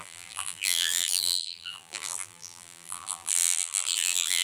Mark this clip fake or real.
fake